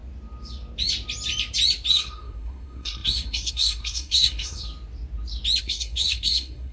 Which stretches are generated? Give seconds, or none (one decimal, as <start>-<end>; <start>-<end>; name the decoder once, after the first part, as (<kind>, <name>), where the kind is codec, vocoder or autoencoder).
1.9-4.7 (codec, SNAC); 5.6-6.7